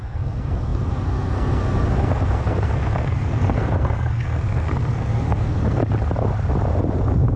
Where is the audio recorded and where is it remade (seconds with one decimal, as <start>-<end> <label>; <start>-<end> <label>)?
0.0-5.8 remade; 5.8-7.4 recorded